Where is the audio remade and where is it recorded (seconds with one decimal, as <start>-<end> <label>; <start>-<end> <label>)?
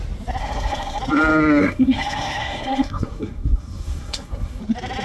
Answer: 0.0-0.4 recorded; 0.4-1.0 remade; 1.0-1.6 recorded; 1.6-4.6 remade; 4.6-5.0 recorded